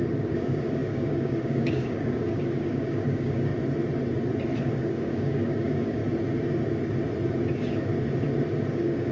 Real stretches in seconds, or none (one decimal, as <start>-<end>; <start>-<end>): 3.5-4.6; 6.0-7.5; 7.9-8.7